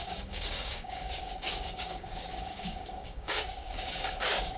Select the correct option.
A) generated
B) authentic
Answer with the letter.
A